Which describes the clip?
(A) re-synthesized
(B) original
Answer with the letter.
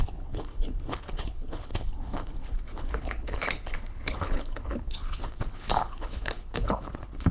A